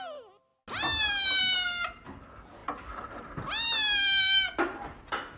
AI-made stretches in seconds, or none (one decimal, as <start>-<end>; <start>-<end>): none